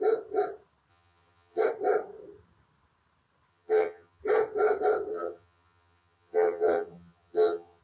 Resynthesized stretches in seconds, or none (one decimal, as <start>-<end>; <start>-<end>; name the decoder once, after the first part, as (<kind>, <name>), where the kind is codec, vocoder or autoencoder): 0.9-1.6 (vocoder, HiFi-GAN); 3.5-4.2; 5.1-7.8